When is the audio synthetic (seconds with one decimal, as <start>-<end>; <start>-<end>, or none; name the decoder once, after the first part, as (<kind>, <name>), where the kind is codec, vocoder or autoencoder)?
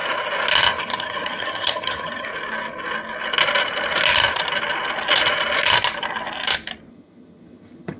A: 0.8-2.3 (vocoder, HiFi-GAN); 6.9-8.0